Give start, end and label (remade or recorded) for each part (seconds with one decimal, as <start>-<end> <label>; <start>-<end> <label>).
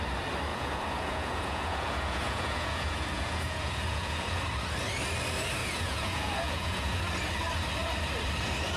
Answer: 0.0-0.5 recorded; 0.5-4.4 remade; 4.4-5.6 recorded; 5.6-7.0 remade; 7.0-8.8 recorded